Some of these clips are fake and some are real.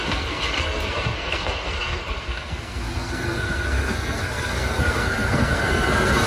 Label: fake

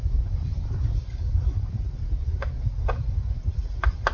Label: real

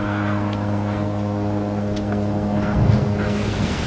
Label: fake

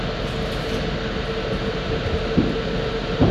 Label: real